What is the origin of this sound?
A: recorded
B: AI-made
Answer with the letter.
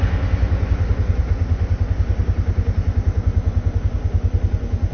A